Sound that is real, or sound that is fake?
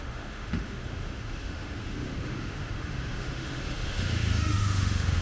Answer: fake